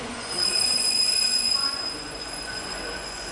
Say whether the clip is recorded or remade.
remade